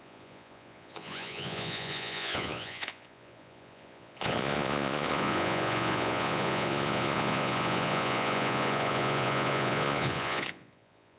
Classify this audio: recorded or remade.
remade